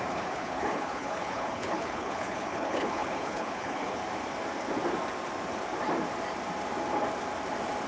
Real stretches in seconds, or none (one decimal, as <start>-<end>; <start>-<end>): 4.0-7.9